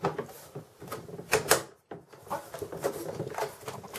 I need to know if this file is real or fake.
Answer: real